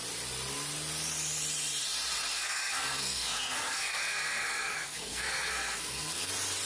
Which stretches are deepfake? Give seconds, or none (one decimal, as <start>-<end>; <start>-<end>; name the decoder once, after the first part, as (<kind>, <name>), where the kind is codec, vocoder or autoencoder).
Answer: 2.3-6.3 (codec, SNAC)